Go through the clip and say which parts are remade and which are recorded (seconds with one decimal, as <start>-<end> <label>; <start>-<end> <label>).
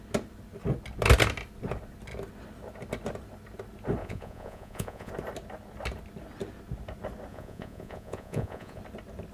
0.0-4.0 recorded; 4.0-5.1 remade; 5.1-7.3 recorded; 7.3-8.8 remade; 8.8-9.3 recorded